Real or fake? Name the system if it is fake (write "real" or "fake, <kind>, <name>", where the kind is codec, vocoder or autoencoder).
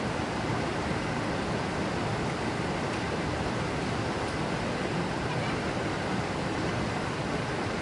real